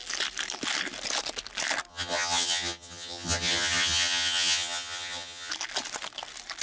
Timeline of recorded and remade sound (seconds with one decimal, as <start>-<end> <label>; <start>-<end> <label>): 0.0-1.9 recorded; 1.9-5.5 remade; 5.5-6.6 recorded